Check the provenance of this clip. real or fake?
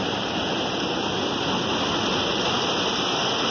real